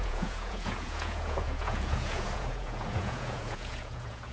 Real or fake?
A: fake